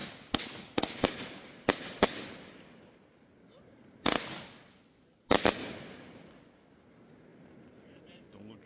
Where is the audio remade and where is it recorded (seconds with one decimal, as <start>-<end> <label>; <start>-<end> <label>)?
0.0-7.3 recorded; 7.3-8.2 remade; 8.2-8.7 recorded